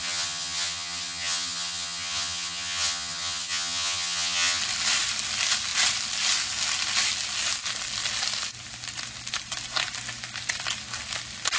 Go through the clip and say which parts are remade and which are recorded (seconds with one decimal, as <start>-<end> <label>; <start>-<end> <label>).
0.0-4.6 remade; 4.6-11.6 recorded